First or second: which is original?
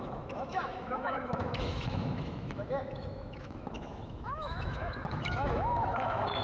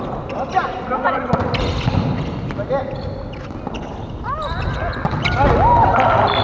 second